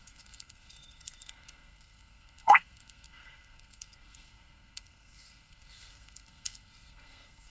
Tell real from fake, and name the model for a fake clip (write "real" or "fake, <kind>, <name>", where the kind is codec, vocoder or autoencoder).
fake, codec, SNAC